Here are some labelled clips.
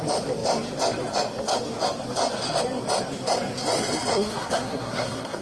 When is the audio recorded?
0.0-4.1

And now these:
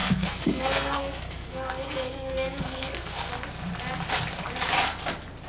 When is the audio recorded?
3.3-5.5

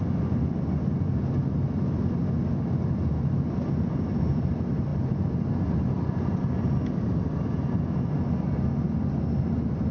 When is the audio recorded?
0.0-9.9

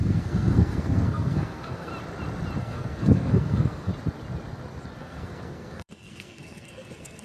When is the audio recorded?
1.9-2.6; 3.9-5.0

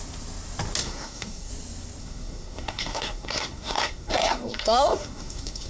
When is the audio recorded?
0.0-0.8; 1.5-2.0

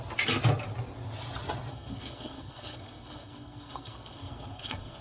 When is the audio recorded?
0.0-1.7